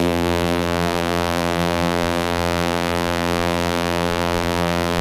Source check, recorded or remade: remade